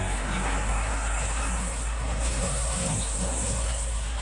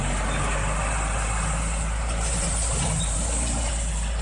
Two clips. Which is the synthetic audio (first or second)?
first